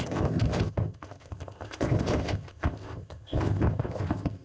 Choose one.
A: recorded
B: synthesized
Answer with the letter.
B